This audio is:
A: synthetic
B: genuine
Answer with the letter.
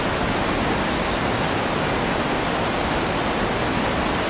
B